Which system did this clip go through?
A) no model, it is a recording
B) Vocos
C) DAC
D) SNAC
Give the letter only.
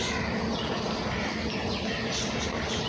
A